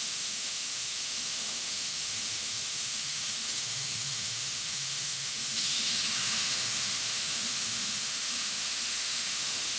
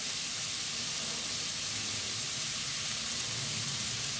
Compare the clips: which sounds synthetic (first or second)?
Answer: first